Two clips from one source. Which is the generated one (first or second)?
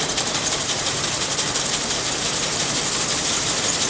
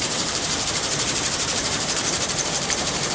second